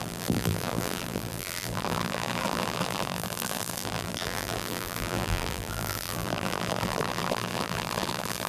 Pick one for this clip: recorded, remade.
remade